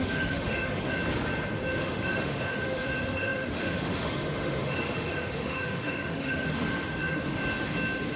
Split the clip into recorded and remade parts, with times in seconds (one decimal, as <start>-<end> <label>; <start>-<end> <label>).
0.0-1.0 remade; 1.0-1.8 recorded; 1.8-7.4 remade; 7.4-8.2 recorded

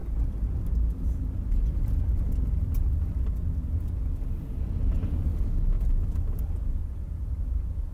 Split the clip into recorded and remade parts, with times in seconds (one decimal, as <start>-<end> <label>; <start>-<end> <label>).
0.0-6.8 recorded; 6.8-7.9 remade

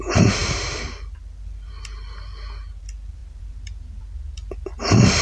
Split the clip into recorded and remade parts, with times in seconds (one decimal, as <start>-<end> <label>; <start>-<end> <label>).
0.0-3.2 recorded; 3.2-4.0 remade; 4.0-5.2 recorded

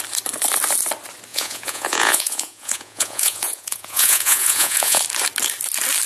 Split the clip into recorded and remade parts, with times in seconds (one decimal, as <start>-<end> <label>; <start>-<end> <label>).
0.0-1.3 recorded; 1.3-5.0 remade; 5.0-6.1 recorded

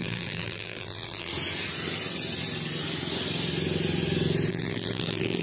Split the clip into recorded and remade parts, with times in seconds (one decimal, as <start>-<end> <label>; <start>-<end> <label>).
0.0-1.3 remade; 1.3-4.5 recorded; 4.5-5.4 remade